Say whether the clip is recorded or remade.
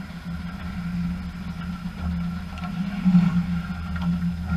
recorded